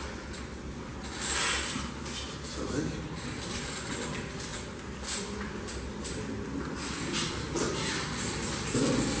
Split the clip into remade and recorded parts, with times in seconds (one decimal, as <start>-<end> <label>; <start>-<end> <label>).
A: 0.0-9.2 recorded